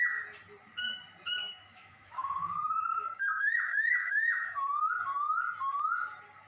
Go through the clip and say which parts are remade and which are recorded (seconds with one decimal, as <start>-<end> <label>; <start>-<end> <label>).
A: 0.0-1.4 recorded; 1.4-4.9 remade; 4.9-6.5 recorded